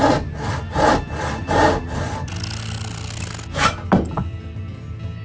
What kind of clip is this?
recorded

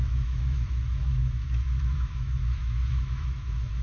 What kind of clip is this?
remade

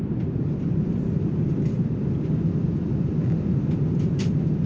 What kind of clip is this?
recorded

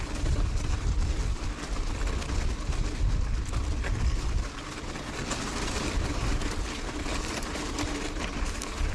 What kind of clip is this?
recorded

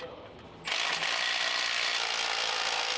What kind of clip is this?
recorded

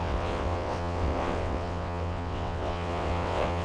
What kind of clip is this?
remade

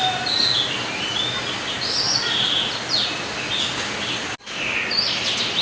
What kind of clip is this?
recorded